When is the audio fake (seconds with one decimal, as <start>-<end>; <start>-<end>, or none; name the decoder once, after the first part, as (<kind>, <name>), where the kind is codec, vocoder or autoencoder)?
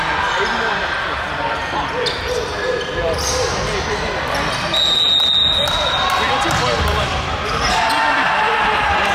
none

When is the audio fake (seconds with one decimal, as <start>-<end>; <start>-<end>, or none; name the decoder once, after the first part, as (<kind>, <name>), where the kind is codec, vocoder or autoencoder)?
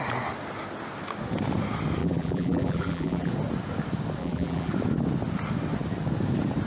2.0-3.3 (vocoder, BigVGAN v2); 4.2-4.7